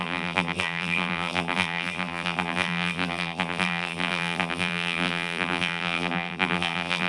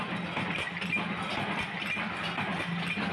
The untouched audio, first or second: second